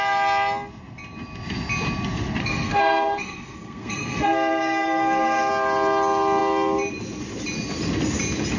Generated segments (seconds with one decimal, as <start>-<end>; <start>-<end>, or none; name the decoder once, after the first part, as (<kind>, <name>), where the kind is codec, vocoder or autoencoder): 2.4-5.5 (codec, SNAC)